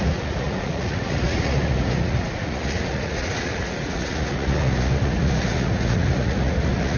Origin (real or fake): fake